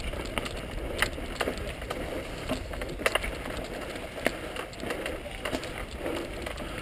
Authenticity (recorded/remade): recorded